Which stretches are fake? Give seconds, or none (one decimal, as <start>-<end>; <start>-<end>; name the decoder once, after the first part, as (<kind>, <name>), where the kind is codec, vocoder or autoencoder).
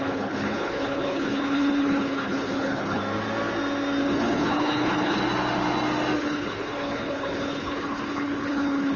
0.0-3.0 (codec, HILCodec); 4.0-5.2; 6.2-9.0